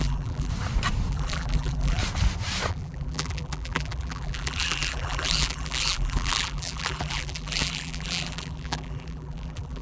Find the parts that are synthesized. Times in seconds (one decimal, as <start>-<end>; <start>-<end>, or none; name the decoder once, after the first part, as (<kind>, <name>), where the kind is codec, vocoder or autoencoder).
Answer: 0.0-0.5 (vocoder, BigVGAN v2); 1.1-2.0; 2.7-9.8